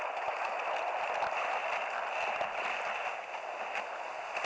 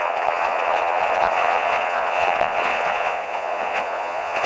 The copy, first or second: second